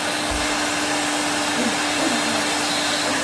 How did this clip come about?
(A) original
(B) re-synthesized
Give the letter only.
A